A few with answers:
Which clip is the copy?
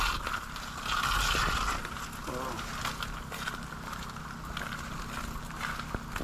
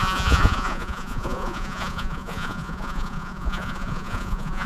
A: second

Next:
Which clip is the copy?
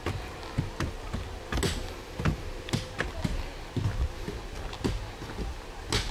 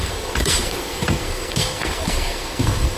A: second